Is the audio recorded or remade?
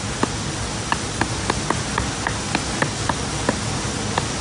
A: recorded